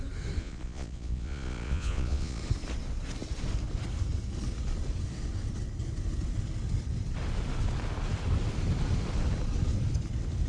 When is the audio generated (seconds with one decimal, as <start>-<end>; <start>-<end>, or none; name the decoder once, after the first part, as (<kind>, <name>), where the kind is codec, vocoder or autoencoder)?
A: 0.4-2.4 (vocoder, Vocos)